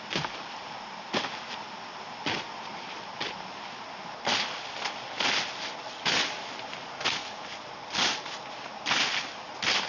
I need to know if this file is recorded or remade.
recorded